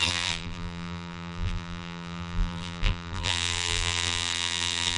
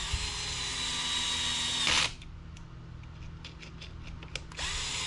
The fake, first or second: first